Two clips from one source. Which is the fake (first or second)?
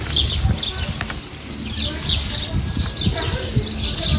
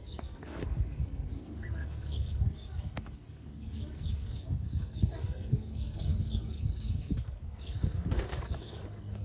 second